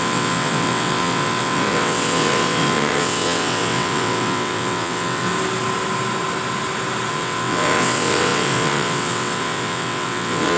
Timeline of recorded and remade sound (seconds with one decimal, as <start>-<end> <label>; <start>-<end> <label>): 0.0-5.3 remade; 5.3-7.1 recorded; 7.1-10.6 remade